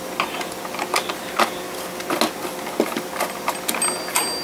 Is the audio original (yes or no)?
yes